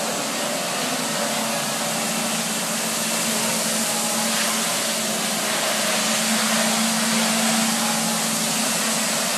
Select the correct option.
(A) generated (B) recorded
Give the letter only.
B